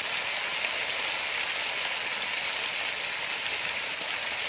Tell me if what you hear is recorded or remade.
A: recorded